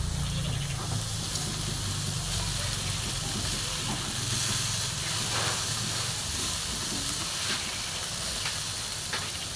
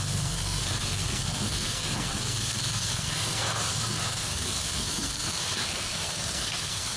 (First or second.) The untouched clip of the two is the first